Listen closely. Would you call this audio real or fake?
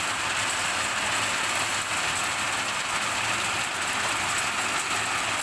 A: real